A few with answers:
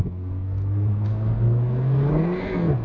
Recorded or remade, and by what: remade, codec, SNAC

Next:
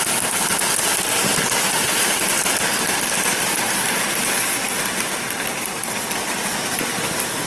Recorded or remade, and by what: recorded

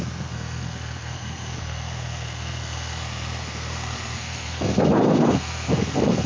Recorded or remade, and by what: remade, codec, SNAC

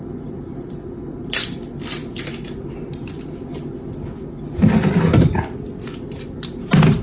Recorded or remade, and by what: recorded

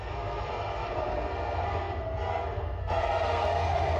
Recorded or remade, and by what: remade, codec, SNAC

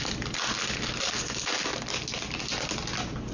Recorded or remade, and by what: recorded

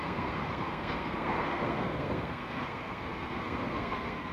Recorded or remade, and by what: remade, codec, SNAC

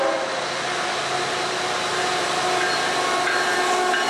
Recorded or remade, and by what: recorded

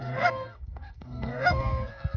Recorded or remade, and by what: remade, codec, SNAC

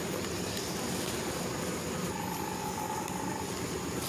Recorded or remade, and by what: recorded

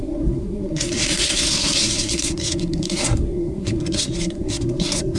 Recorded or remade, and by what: remade, codec, SNAC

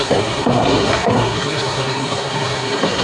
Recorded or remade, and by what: remade, codec, SNAC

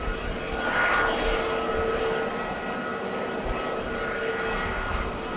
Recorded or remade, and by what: recorded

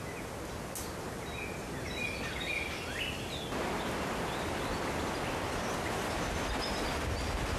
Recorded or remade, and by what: recorded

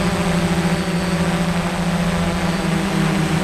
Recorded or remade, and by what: recorded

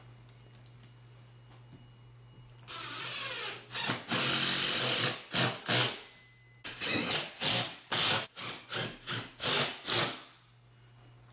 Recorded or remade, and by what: recorded